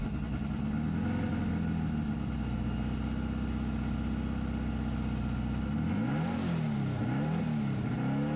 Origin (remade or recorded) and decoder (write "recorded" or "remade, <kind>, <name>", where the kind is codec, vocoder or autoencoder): recorded